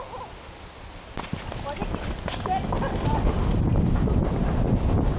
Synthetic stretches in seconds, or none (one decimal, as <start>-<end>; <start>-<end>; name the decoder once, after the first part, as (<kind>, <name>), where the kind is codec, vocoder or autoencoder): none